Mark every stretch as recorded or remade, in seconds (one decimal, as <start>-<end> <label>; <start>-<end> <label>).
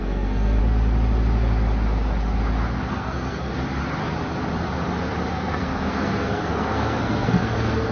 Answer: 0.0-0.6 remade; 0.6-2.9 recorded; 2.9-3.5 remade; 3.5-5.3 recorded; 5.3-7.9 remade